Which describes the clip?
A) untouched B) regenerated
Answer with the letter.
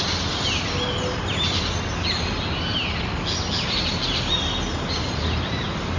A